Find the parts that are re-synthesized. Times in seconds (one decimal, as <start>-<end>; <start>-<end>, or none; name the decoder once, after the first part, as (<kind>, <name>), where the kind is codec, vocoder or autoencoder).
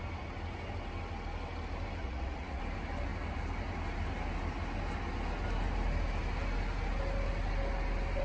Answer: 2.0-2.6 (vocoder, Vocos)